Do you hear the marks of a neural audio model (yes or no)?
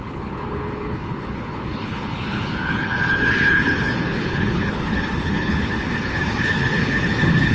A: yes